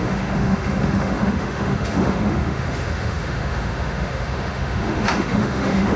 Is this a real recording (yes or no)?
no